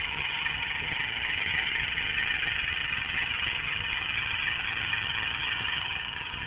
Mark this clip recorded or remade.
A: remade